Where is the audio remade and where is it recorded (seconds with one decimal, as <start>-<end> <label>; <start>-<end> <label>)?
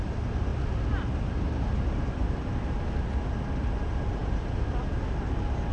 0.0-5.7 recorded